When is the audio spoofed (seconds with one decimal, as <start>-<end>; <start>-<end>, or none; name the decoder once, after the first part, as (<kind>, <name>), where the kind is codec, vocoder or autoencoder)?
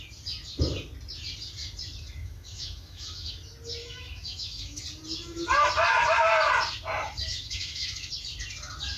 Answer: 2.2-3.3 (autoencoder, DAC-VAE); 3.8-4.8; 7.3-8.1